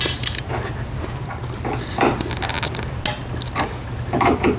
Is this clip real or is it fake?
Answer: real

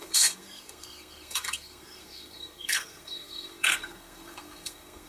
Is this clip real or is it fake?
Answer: fake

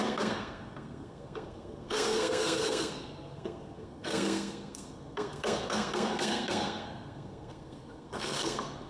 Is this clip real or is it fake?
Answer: fake